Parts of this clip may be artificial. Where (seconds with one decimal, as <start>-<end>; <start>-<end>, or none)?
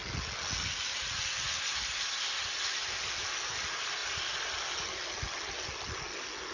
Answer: none